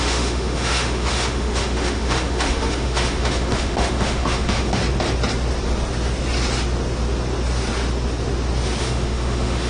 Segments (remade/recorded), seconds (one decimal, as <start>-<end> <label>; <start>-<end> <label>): 0.0-4.8 remade; 4.8-8.8 recorded; 8.8-9.7 remade